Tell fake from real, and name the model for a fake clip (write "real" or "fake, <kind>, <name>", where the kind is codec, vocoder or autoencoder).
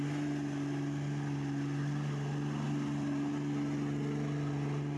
real